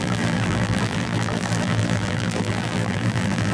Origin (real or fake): fake